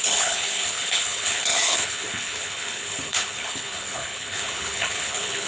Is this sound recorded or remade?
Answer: remade